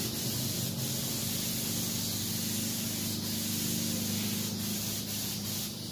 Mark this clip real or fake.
real